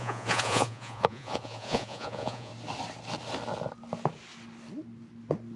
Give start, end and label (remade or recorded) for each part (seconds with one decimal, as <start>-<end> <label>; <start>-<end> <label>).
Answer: 0.0-2.5 remade; 2.5-5.6 recorded

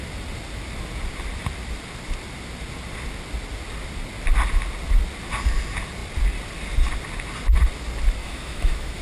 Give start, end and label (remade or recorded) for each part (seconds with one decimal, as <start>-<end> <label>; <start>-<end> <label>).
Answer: 0.0-8.2 recorded; 8.2-9.0 remade